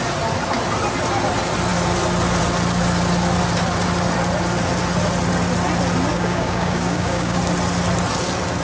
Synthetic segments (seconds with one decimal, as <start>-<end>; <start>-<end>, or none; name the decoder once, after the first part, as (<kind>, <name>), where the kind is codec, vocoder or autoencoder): 6.1-7.4 (codec, DAC)